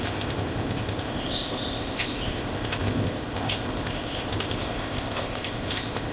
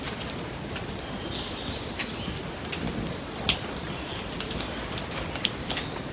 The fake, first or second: first